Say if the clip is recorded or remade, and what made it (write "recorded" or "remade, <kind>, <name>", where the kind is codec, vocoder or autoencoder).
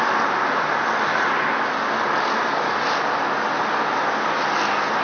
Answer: recorded